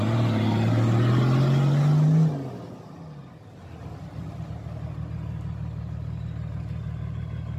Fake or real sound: real